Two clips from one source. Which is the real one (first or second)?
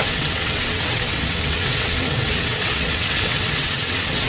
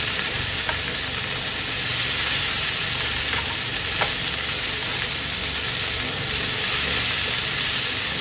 second